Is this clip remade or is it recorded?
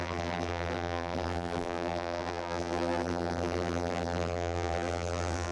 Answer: remade